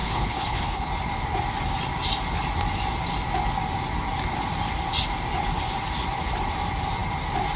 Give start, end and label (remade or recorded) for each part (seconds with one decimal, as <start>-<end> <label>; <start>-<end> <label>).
0.0-0.9 remade; 0.9-7.6 recorded